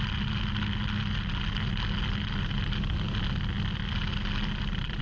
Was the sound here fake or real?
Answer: real